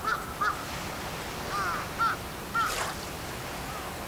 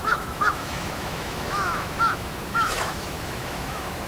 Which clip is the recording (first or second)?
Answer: first